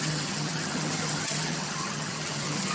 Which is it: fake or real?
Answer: fake